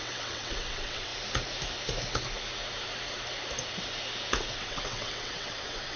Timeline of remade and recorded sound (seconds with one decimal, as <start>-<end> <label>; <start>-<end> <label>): 0.0-1.1 remade; 1.1-4.5 recorded; 4.5-6.0 remade